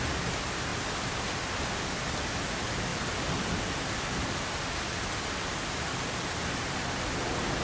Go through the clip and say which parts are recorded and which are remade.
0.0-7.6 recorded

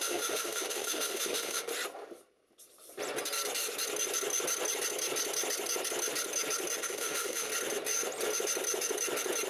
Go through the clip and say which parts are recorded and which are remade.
0.0-1.7 remade; 1.7-6.8 recorded; 6.8-7.5 remade; 7.5-9.5 recorded

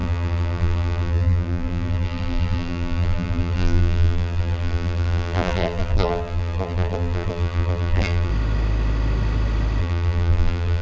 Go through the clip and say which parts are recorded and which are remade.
0.0-8.3 remade; 8.3-9.8 recorded; 9.8-10.8 remade